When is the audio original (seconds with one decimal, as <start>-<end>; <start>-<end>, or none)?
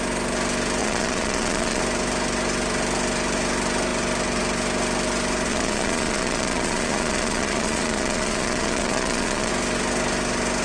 0.0-0.8; 1.8-5.5; 9.5-10.6